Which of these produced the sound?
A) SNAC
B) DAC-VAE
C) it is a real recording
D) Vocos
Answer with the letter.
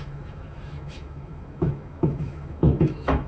B